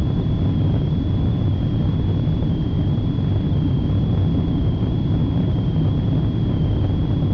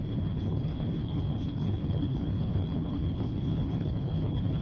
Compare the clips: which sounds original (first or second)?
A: first